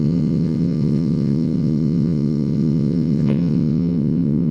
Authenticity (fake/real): fake